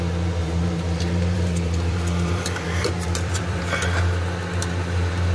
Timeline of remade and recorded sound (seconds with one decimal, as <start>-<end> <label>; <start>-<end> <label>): 0.0-0.4 recorded; 0.4-3.6 remade; 3.6-5.3 recorded